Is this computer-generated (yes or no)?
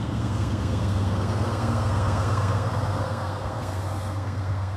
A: yes